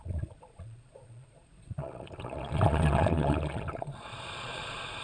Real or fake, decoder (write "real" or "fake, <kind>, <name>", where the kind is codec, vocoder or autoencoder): fake, vocoder, Vocos